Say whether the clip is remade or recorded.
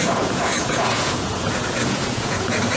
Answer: remade